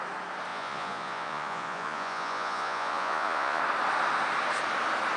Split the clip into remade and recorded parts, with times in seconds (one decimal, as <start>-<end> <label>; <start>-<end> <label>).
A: 0.0-0.5 recorded; 0.5-3.6 remade; 3.6-5.2 recorded